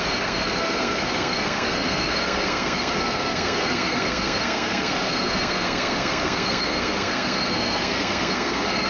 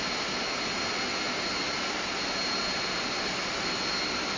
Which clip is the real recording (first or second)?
second